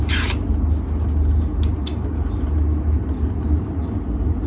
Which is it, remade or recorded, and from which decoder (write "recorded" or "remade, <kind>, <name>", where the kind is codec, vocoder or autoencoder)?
recorded